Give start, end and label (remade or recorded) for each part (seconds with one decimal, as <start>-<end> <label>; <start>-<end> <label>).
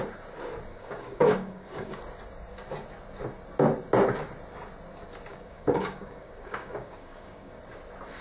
0.0-0.7 recorded; 0.7-2.0 remade; 2.0-5.3 recorded; 5.3-7.6 remade; 7.6-8.2 recorded